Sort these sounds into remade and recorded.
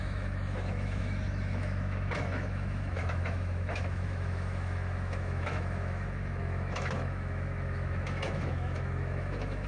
remade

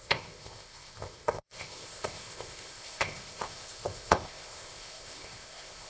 remade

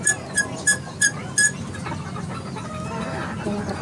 recorded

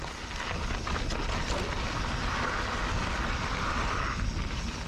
recorded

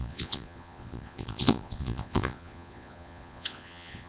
remade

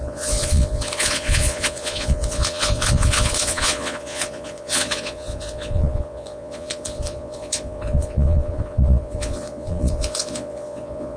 remade